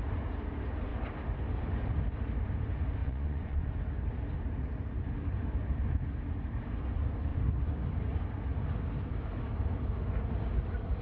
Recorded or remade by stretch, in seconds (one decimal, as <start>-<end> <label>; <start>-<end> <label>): 0.0-3.0 recorded; 3.0-3.7 remade; 3.7-11.0 recorded